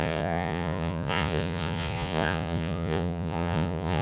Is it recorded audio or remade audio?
remade